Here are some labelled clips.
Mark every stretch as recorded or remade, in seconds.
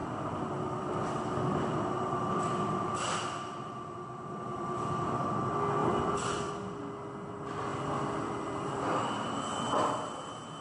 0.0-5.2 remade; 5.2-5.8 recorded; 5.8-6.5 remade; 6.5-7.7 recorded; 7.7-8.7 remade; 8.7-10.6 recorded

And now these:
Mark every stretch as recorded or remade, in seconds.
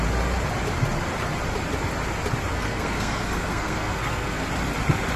0.0-2.5 recorded; 2.5-4.5 remade; 4.5-5.2 recorded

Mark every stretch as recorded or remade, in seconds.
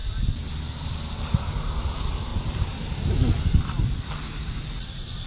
0.0-5.3 recorded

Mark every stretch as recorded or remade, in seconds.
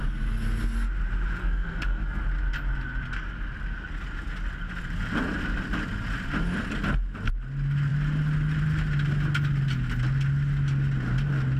0.0-1.4 recorded; 1.4-2.2 remade; 2.2-11.6 recorded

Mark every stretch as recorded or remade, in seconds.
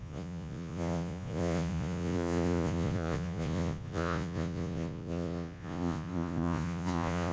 0.0-7.3 remade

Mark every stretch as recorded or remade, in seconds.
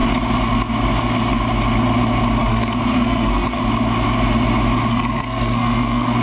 0.0-2.4 recorded; 2.4-3.6 remade; 3.6-4.9 recorded; 4.9-6.2 remade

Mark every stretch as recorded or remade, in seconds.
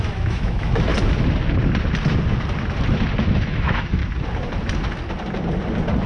0.0-0.9 remade; 0.9-3.2 recorded; 3.2-4.0 remade; 4.0-6.1 recorded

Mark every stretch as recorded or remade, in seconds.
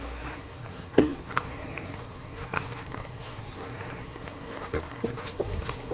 0.0-5.9 remade